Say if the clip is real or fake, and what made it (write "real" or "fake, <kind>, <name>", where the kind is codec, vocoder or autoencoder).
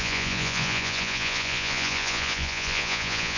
fake, vocoder, Vocos